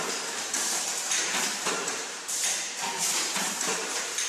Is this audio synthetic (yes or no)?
yes